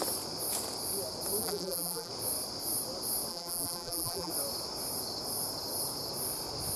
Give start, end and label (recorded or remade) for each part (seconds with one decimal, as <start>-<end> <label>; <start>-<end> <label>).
0.0-1.4 recorded; 1.4-2.1 remade; 2.1-3.3 recorded; 3.3-4.3 remade; 4.3-6.8 recorded